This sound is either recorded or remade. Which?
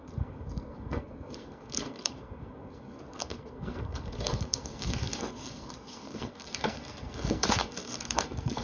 remade